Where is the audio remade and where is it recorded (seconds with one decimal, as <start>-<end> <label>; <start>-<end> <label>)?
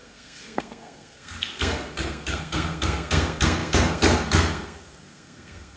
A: 0.0-5.8 remade